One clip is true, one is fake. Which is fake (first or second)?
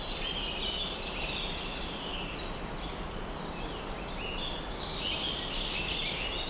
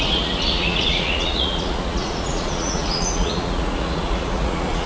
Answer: second